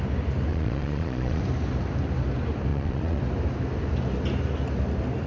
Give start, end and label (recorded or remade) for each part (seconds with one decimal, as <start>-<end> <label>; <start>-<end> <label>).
0.0-0.5 recorded; 0.5-1.4 remade; 1.4-2.7 recorded; 2.7-3.2 remade; 3.2-5.3 recorded